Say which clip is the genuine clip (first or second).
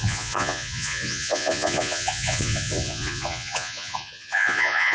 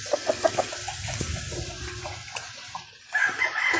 second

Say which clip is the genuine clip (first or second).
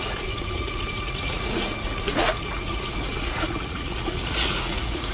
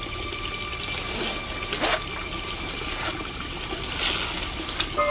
second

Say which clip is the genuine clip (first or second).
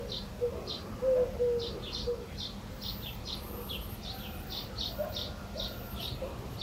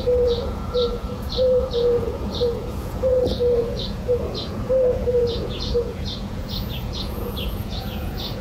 first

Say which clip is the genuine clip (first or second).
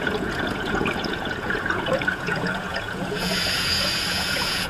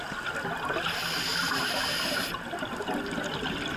second